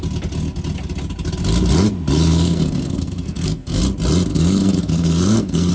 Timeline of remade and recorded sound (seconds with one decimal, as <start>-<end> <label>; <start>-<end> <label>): 0.0-2.3 recorded; 2.3-3.8 remade; 3.8-4.3 recorded; 4.3-5.7 remade